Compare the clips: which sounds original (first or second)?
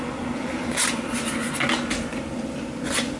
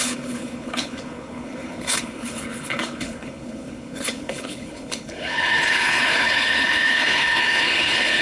first